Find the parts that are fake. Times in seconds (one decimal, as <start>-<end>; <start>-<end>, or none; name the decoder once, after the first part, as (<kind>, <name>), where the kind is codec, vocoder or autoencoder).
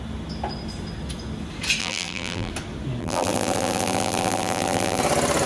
1.8-2.5 (vocoder, BigVGAN v2); 3.0-5.0